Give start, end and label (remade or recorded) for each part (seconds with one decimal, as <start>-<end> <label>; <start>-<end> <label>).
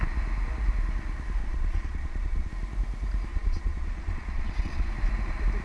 0.0-1.4 recorded; 1.4-2.5 remade; 2.5-3.3 recorded; 3.3-4.9 remade; 4.9-5.6 recorded